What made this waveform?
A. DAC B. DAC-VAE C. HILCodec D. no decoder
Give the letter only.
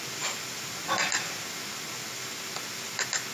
D